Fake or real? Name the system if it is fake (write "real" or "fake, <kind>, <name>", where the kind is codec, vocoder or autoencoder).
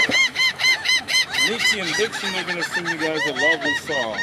fake, autoencoder, DAC-VAE